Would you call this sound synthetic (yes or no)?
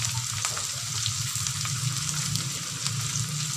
no